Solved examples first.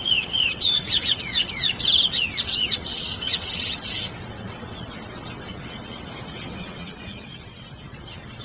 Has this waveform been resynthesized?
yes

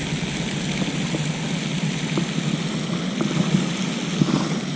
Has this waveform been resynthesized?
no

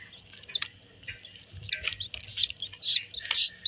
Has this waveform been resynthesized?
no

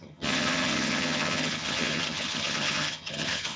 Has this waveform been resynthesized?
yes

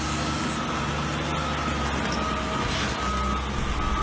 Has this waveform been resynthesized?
no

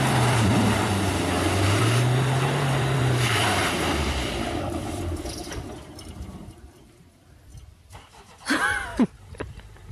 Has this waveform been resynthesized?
yes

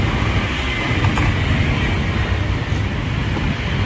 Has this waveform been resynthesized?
no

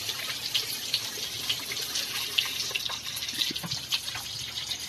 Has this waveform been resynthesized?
no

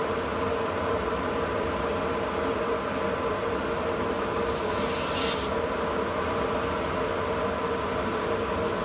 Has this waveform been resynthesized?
no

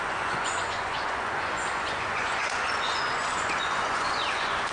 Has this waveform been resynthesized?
yes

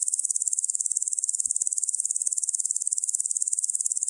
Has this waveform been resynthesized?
no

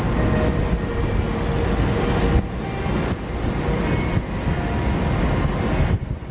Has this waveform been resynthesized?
no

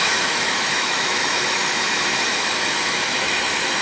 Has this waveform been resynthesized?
yes